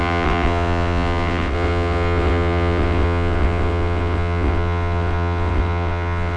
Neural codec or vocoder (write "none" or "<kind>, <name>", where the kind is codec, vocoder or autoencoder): vocoder, WaveNeXt